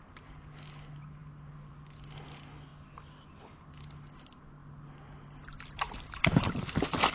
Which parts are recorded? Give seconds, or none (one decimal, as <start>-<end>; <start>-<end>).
0.0-7.1